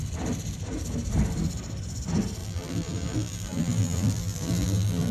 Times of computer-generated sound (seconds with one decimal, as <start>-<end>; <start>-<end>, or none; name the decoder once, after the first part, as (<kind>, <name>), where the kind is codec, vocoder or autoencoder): 2.4-5.1 (vocoder, BigVGAN v2)